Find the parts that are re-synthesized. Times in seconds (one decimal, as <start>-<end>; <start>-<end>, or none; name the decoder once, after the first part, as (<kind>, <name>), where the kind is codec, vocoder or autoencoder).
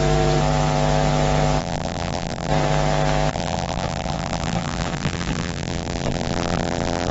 1.6-2.5 (vocoder, BigVGAN v2); 3.3-7.1